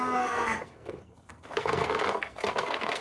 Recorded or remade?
remade